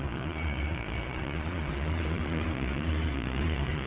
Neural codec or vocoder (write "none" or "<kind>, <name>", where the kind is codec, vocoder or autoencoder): vocoder, Vocos